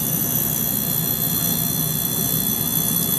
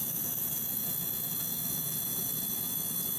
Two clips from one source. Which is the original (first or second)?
first